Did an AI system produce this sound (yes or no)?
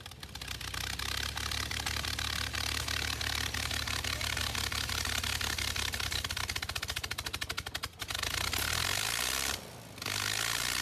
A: no